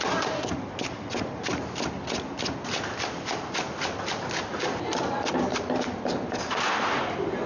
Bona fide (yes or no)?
yes